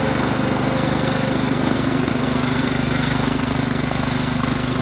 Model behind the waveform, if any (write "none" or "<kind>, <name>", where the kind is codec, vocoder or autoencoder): codec, SNAC